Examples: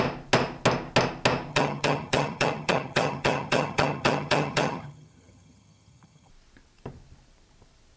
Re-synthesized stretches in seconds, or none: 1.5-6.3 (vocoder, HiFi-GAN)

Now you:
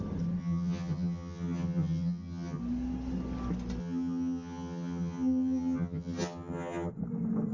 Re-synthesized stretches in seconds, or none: 0.4-2.6 (vocoder, HiFi-GAN); 3.8-6.9

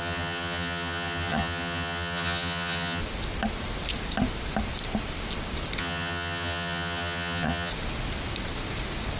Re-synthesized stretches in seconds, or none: 0.0-3.0 (vocoder, HiFi-GAN); 5.8-7.7

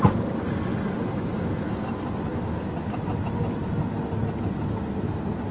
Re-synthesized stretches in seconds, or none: none

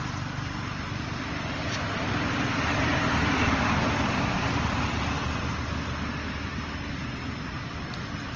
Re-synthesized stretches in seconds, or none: none

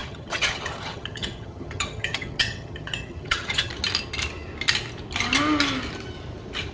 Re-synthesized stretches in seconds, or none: 0.0-3.7 (vocoder, HiFi-GAN)

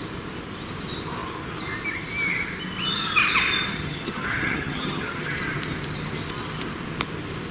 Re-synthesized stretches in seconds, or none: 3.7-5.4 (vocoder, HiFi-GAN)